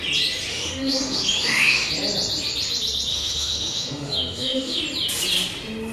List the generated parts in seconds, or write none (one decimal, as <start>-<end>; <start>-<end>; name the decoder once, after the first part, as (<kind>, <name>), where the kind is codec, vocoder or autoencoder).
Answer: 0.5-1.9 (autoencoder, DAC-VAE); 3.1-4.8